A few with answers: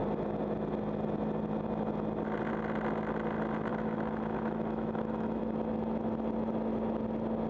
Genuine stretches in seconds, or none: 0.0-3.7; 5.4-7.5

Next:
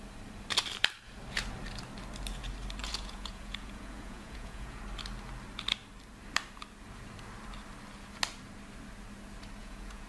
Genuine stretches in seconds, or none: 0.0-2.8; 4.8-9.6

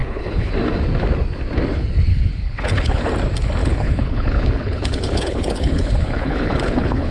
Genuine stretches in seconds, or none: 0.5-2.1; 3.1-3.6